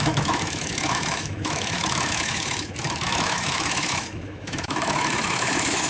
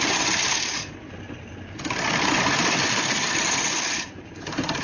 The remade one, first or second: first